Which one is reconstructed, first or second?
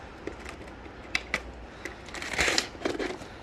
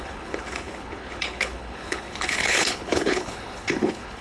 second